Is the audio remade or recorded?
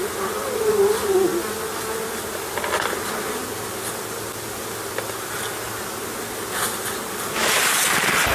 recorded